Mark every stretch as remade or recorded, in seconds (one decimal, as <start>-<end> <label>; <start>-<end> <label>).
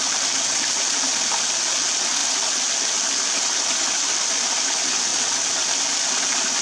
0.0-6.6 recorded